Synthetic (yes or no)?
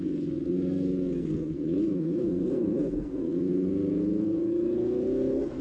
yes